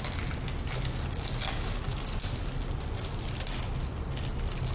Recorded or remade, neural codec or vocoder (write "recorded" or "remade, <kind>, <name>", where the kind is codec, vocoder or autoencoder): recorded